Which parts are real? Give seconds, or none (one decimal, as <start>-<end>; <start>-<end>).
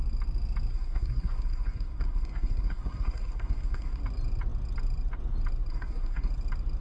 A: 0.0-0.7; 4.0-5.7; 6.3-6.8